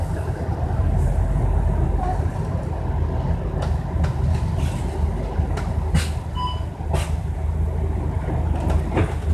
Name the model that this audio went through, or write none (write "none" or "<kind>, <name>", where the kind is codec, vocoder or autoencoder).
none